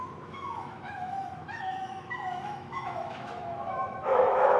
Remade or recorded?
remade